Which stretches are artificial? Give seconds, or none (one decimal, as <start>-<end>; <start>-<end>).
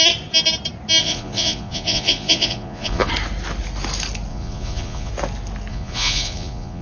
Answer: 1.0-3.1; 4.3-5.1; 5.7-6.8